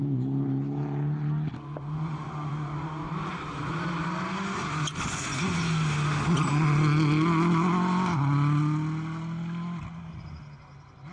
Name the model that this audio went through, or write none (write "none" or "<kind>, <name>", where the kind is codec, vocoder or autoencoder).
none